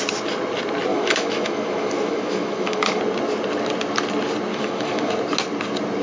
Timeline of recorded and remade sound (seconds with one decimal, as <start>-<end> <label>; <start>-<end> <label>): 0.0-0.9 recorded; 0.9-3.0 remade; 3.0-4.5 recorded; 4.5-5.1 remade; 5.1-6.0 recorded